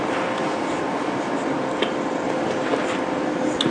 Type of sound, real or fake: real